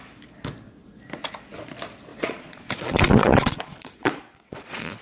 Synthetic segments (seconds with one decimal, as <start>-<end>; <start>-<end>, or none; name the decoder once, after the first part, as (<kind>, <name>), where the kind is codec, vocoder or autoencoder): 2.1-5.0 (vocoder, Vocos)